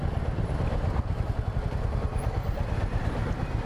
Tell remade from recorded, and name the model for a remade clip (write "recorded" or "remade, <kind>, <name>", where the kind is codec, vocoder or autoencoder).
recorded